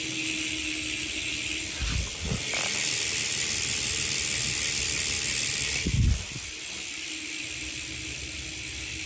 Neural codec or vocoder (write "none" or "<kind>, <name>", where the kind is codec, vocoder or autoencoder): none